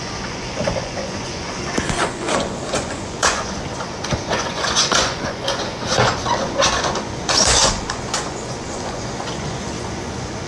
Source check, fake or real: fake